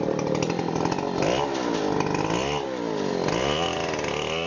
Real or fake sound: real